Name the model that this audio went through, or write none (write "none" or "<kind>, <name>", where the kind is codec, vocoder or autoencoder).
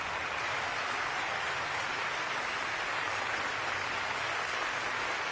none